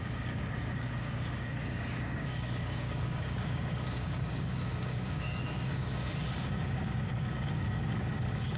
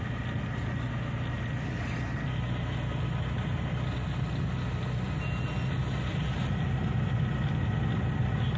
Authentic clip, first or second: second